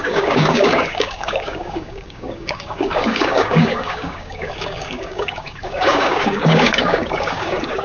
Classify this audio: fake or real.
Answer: fake